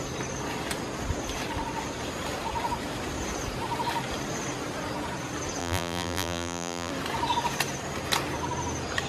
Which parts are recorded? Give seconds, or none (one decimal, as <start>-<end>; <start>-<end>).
0.0-5.6; 6.9-9.1